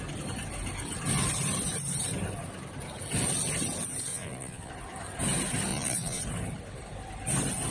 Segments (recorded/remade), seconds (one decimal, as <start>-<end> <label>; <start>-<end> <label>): 0.0-4.1 recorded; 4.1-4.7 remade; 4.7-5.7 recorded; 5.7-6.2 remade; 6.2-7.7 recorded